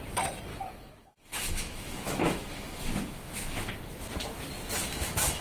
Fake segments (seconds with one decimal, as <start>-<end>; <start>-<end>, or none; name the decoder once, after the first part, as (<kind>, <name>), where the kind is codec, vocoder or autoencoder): 0.5-3.7 (autoencoder, DAC-VAE); 4.8-5.4